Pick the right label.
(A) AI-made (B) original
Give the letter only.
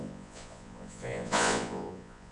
A